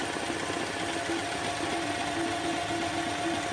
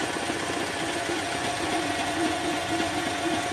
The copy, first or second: second